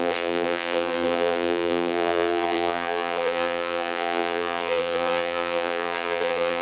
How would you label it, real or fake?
fake